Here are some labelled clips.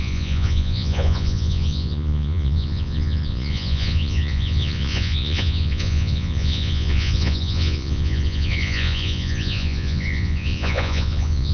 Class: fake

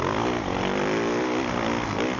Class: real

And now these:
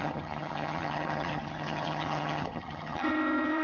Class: fake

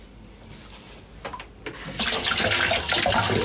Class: real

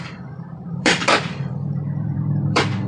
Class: fake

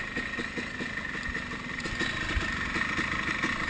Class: real